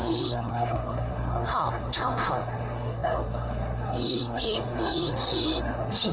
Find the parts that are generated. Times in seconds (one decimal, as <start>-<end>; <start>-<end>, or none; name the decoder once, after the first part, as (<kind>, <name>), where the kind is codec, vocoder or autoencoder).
0.0-6.1 (codec, SNAC)